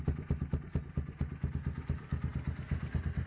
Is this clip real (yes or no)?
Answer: yes